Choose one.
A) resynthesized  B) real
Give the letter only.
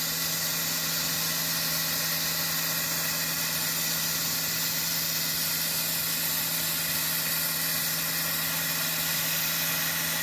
B